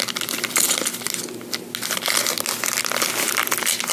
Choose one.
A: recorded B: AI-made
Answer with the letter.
A